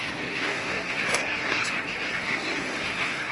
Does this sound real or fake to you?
fake